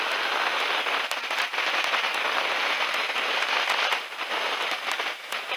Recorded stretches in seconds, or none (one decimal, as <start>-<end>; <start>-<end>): 0.0-5.6